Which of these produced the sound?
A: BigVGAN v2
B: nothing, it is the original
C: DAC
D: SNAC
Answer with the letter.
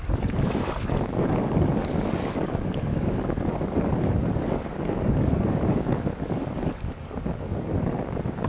C